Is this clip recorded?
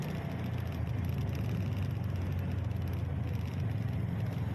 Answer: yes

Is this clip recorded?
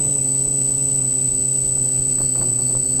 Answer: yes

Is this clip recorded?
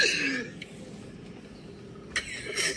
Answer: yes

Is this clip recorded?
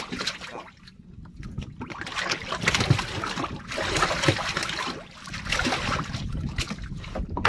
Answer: yes